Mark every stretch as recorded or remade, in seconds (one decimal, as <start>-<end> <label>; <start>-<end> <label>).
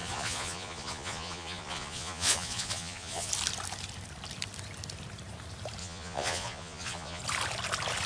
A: 0.0-3.3 remade; 3.3-5.8 recorded; 5.8-7.2 remade; 7.2-8.1 recorded